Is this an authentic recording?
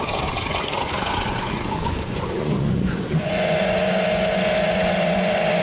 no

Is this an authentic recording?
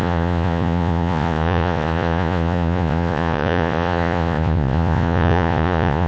no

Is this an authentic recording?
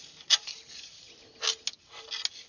yes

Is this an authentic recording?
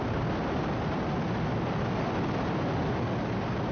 yes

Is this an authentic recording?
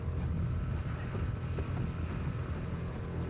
yes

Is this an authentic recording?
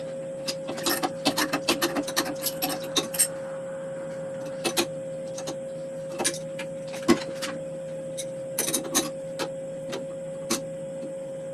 yes